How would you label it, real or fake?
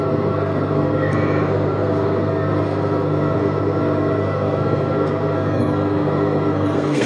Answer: fake